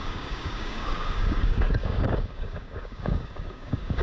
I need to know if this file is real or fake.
fake